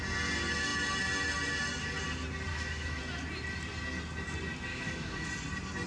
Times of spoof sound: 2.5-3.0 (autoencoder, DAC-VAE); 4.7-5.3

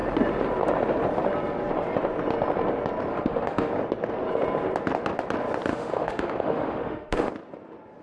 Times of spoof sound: 3.1-3.7 (autoencoder, DAC-VAE); 5.7-7.3

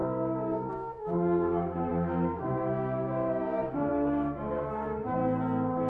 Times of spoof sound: 0.0-5.2 (autoencoder, DAC-VAE)

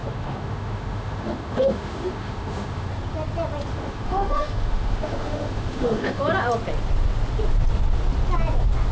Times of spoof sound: 0.0-2.9 (autoencoder, DAC-VAE); 3.7-6.2

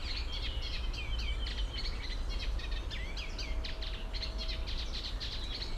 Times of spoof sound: none

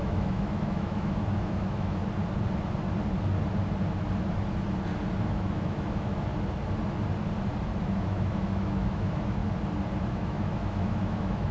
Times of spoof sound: 0.0-2.0 (autoencoder, DAC-VAE); 5.2-6.3; 7.8-9.4; 10.0-11.5

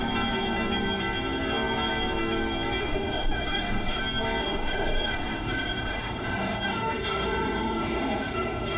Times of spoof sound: 2.8-4.0 (autoencoder, DAC-VAE); 4.4-8.8